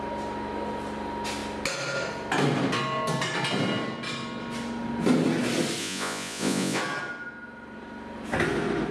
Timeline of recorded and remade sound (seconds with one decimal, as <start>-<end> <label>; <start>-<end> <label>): 0.0-5.8 recorded; 5.8-6.8 remade; 6.8-8.9 recorded